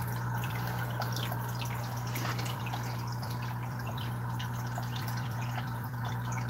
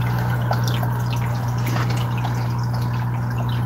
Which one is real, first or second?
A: second